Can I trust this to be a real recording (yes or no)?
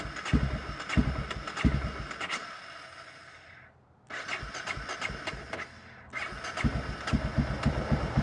yes